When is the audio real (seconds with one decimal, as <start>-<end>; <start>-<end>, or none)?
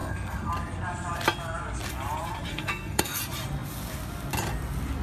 0.5-2.5; 3.2-5.0